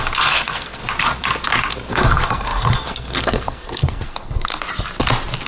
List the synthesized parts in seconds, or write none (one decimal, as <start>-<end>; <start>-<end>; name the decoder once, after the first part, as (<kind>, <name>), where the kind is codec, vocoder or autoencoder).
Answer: 0.0-0.8 (codec, SNAC); 1.9-4.5